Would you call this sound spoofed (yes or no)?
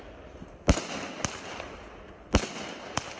no